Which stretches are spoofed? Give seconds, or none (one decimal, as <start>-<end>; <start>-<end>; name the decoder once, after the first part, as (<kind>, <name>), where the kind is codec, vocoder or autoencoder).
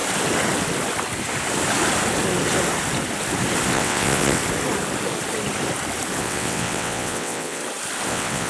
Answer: 3.7-4.4 (vocoder, WaveNeXt); 6.2-7.6; 8.1-8.5